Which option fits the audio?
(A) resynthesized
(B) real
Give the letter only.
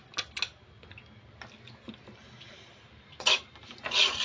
B